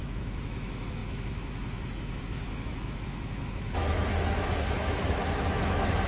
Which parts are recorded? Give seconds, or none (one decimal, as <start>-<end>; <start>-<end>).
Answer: 4.1-4.6